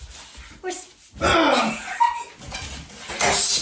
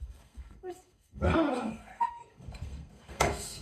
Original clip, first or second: first